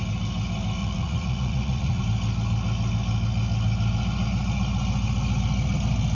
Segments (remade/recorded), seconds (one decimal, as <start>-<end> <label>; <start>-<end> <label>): 0.0-0.8 recorded; 0.8-2.0 remade; 2.0-6.1 recorded